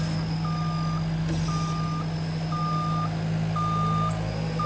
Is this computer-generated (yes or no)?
no